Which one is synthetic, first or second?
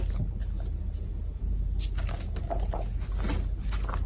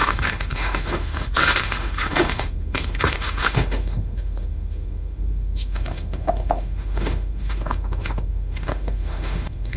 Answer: second